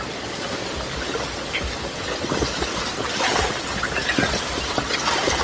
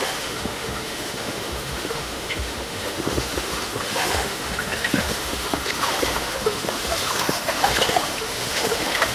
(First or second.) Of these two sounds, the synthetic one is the second